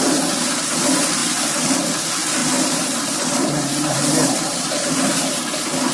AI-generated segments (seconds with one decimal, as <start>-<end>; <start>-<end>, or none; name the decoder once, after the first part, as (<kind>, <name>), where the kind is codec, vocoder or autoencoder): 2.4-5.9 (vocoder, BigVGAN v2)